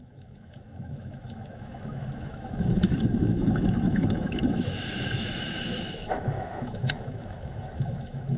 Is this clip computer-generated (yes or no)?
yes